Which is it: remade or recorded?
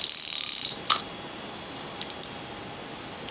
recorded